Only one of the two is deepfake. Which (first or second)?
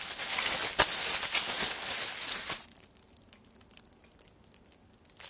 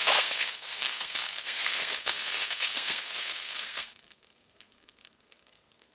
second